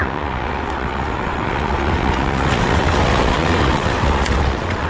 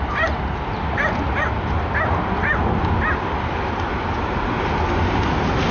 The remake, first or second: first